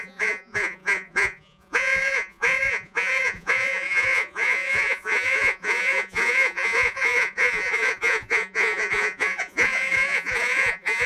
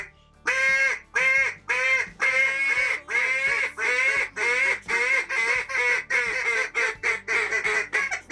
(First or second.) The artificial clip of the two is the first